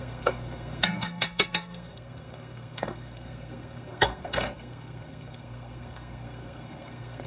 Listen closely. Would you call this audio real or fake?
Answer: fake